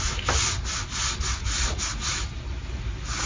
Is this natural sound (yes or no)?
yes